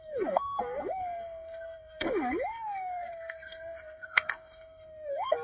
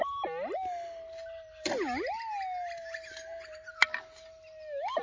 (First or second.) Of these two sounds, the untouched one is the second